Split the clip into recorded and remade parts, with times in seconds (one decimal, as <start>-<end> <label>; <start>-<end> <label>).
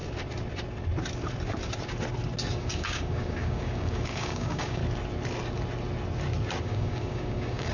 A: 0.0-2.5 recorded; 2.5-4.8 remade; 4.8-6.6 recorded; 6.6-7.7 remade